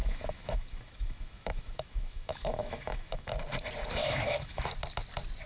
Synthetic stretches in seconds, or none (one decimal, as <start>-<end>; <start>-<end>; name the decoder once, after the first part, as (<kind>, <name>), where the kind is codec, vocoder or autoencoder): 0.0-3.3 (autoencoder, DAC-VAE); 4.0-4.6